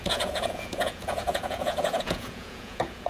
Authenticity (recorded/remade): remade